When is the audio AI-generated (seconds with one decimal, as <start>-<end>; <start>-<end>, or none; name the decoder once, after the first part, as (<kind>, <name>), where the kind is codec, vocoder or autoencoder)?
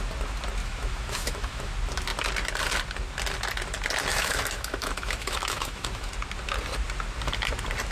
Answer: 0.6-1.7 (autoencoder, DAC-VAE); 4.1-6.1